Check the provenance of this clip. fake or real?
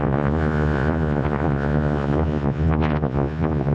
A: fake